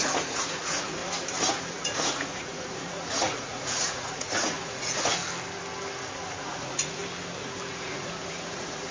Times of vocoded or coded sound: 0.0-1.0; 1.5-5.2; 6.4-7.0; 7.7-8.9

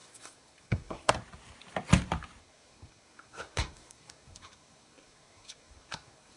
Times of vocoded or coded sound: 0.0-1.1; 2.4-6.4

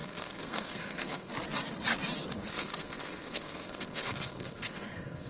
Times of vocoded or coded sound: 0.0-1.3; 2.5-5.3

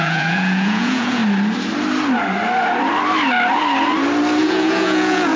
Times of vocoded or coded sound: 0.0-1.2; 4.4-5.4

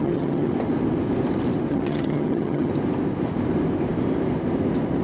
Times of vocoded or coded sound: 0.0-0.5; 1.7-2.7

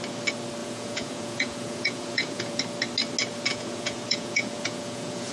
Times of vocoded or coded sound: 0.6-2.6; 3.5-5.3

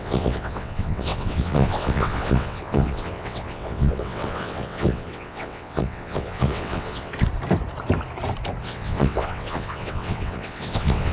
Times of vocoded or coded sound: 0.0-7.1; 8.6-11.1